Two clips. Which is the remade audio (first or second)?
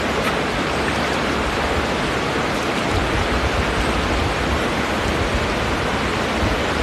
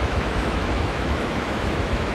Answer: second